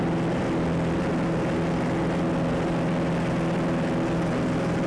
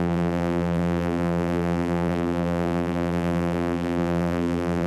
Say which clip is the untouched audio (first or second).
first